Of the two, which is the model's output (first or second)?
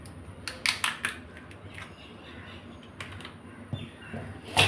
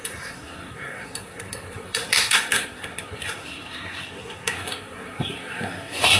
second